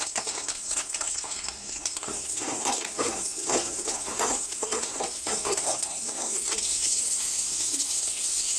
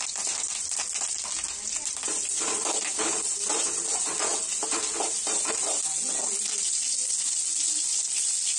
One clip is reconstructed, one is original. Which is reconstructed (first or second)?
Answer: first